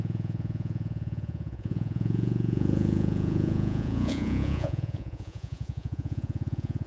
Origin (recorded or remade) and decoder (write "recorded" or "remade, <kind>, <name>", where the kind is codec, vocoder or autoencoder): remade, vocoder, Vocos